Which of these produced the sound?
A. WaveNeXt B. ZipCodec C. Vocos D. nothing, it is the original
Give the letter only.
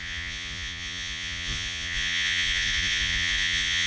C